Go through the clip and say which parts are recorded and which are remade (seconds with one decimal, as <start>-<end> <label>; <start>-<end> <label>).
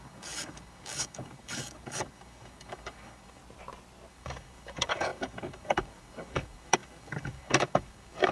0.0-3.4 remade; 3.4-4.1 recorded; 4.1-8.3 remade